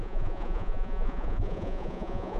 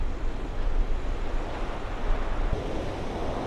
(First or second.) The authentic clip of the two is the second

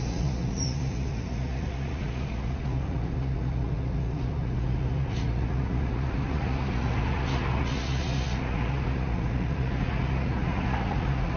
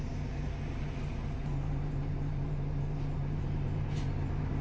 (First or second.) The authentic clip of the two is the second